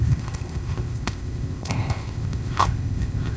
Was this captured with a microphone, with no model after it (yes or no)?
no